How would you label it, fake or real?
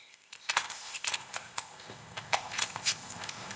fake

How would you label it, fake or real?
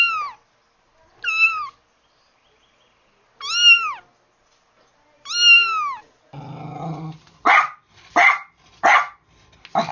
real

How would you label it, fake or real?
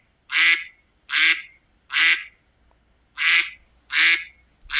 real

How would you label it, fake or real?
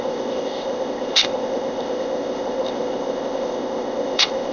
fake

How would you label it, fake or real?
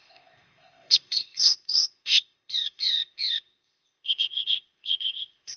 fake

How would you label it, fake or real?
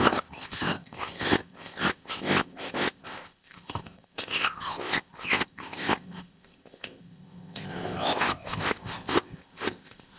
fake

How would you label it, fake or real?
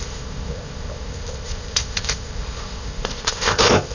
fake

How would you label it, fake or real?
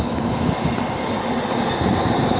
real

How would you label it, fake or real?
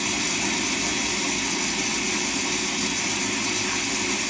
real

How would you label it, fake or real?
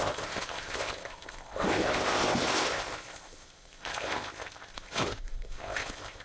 fake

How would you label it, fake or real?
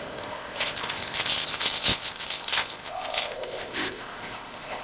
fake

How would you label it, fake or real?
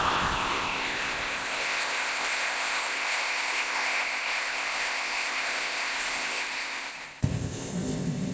fake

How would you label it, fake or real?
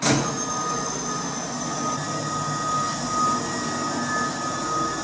real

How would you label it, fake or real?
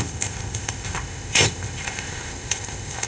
fake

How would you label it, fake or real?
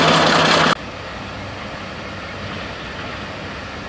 real